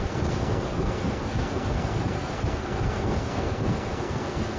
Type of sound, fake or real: fake